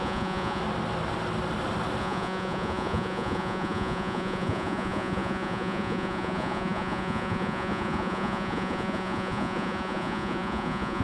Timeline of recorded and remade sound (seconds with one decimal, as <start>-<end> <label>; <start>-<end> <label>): 0.0-0.6 remade; 0.6-2.0 recorded; 2.0-11.0 remade